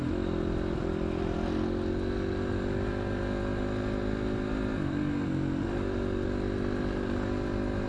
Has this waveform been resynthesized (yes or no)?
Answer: no